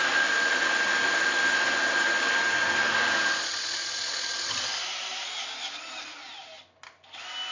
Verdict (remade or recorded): recorded